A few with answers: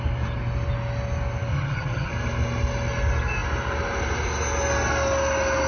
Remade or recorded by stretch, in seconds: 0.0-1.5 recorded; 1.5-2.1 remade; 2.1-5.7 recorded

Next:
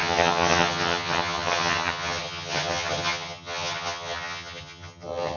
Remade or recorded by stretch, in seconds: 0.0-5.4 remade

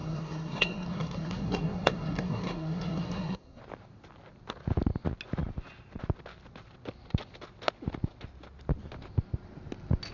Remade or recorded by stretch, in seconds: 0.0-3.6 remade; 3.6-10.1 recorded

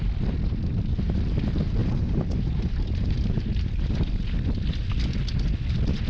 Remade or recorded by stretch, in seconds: 0.0-1.8 recorded; 1.8-4.1 remade; 4.1-6.1 recorded

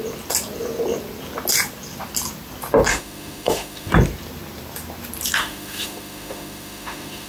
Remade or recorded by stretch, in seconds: 0.0-2.9 recorded; 2.9-3.9 remade; 3.9-5.4 recorded; 5.4-7.3 remade